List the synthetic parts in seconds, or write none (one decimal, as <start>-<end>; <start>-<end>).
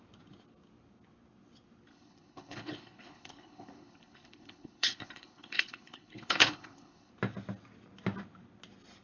1.9-7.1